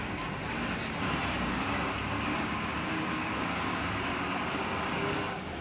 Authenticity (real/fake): fake